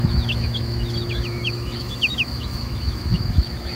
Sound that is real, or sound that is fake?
fake